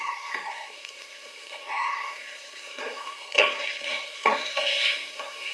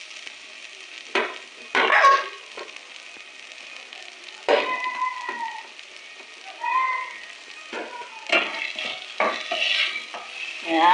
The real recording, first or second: second